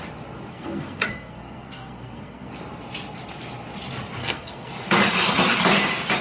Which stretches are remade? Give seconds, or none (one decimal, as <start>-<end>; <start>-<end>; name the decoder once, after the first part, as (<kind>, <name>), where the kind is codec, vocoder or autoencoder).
0.5-2.5 (codec, SNAC); 4.2-4.7